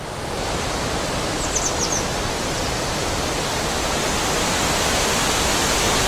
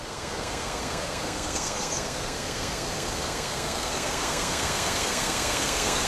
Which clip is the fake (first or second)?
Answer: second